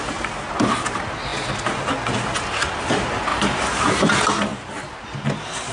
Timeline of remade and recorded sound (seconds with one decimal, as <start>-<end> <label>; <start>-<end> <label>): 0.0-3.3 recorded; 3.3-4.0 remade; 4.0-4.5 recorded; 4.5-5.1 remade; 5.1-5.7 recorded